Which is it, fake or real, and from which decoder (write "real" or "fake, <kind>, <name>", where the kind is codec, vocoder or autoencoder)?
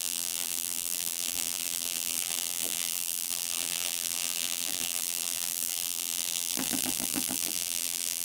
fake, vocoder, BigVGAN v2